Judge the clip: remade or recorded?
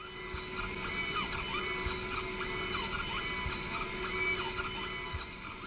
recorded